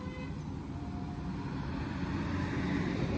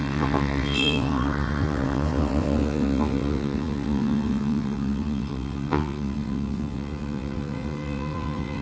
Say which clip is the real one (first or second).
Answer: first